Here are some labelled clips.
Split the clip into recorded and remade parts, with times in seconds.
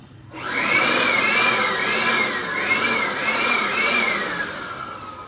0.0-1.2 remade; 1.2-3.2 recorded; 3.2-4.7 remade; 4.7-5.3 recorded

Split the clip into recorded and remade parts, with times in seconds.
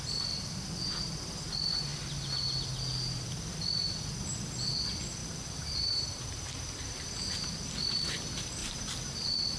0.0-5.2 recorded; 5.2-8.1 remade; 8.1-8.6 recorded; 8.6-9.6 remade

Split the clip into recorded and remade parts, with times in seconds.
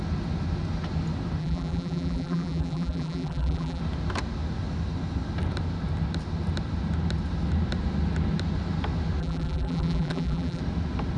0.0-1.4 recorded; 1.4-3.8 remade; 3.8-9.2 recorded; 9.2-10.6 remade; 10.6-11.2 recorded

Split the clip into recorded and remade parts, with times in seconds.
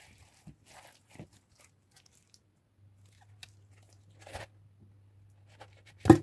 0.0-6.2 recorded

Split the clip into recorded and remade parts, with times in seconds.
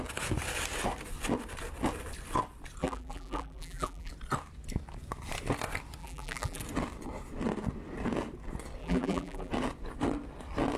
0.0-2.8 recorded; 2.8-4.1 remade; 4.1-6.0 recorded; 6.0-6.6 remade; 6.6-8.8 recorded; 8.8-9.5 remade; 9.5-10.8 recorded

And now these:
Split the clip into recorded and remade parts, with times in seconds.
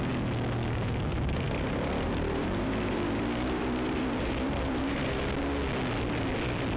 0.0-1.1 recorded; 1.1-5.2 remade; 5.2-6.8 recorded